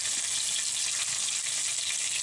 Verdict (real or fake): real